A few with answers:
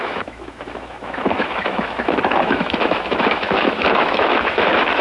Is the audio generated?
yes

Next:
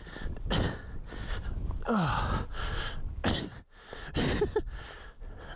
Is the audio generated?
no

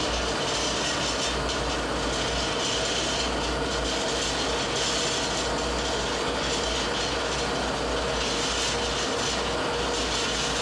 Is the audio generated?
no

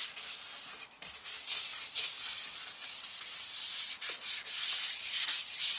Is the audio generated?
no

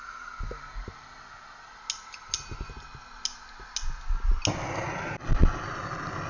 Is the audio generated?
no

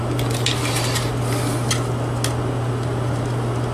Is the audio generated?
no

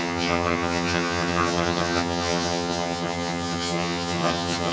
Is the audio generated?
yes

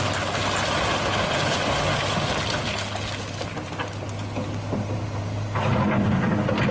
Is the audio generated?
no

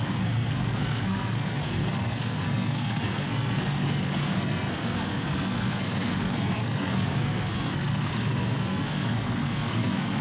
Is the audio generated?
yes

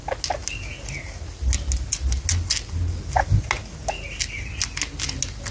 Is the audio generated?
no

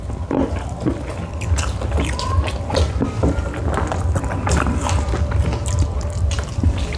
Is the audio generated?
no